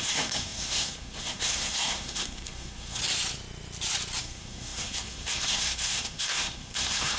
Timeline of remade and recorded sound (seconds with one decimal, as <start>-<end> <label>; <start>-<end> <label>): 0.0-3.0 remade; 3.0-4.2 recorded; 4.2-7.2 remade